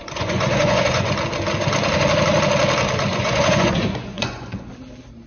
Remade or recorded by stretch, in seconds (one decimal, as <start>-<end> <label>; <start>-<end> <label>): 0.0-1.1 remade; 1.1-3.1 recorded; 3.1-4.7 remade; 4.7-5.3 recorded